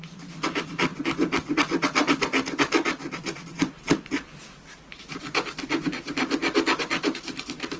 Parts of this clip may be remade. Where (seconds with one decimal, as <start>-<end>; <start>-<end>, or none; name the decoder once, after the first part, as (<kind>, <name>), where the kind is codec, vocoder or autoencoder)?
none